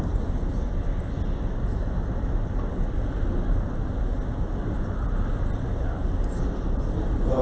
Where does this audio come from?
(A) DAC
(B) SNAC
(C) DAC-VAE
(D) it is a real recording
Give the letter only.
D